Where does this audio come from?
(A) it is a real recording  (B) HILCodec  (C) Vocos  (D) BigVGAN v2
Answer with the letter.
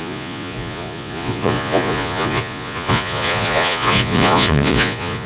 C